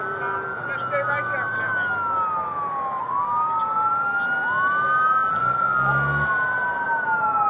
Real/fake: real